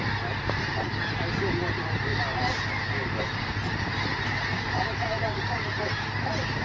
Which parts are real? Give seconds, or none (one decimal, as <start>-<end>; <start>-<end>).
0.0-6.6